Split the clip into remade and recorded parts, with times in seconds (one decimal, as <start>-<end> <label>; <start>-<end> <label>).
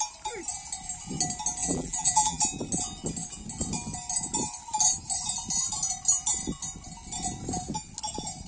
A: 0.0-1.6 recorded; 1.6-2.4 remade; 2.4-8.5 recorded